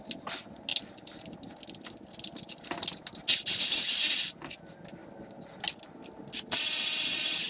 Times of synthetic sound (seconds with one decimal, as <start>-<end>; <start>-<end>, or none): none